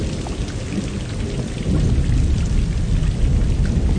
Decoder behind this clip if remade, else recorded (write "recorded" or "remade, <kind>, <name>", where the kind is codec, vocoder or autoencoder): recorded